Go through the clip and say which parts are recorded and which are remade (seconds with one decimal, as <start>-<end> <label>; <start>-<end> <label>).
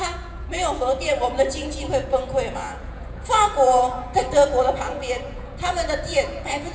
0.0-6.7 remade